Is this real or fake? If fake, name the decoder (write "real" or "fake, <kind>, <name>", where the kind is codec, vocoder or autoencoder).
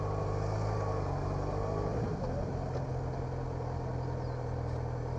real